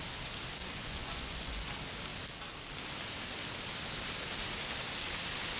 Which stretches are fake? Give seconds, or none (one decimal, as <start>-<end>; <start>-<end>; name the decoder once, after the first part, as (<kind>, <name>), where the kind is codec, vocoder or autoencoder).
0.6-1.7 (vocoder, Vocos)